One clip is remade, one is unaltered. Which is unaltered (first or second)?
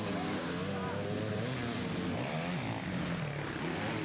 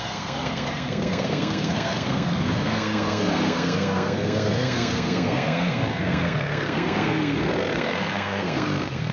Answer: first